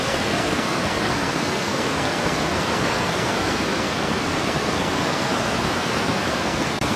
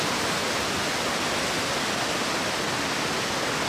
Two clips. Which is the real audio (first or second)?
second